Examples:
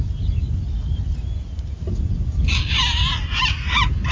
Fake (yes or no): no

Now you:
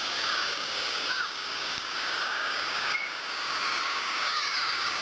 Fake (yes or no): yes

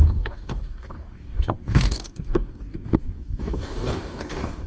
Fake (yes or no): yes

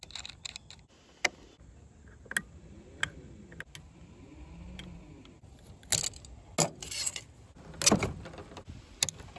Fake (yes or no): no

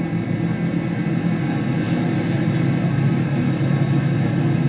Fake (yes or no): no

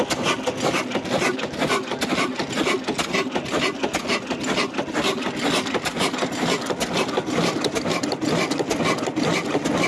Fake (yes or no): no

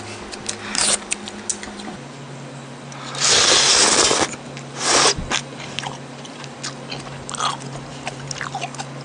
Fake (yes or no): no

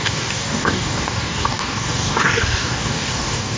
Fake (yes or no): yes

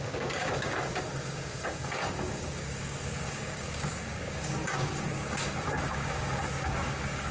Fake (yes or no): yes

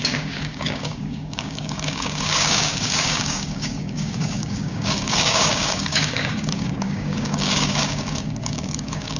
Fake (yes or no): yes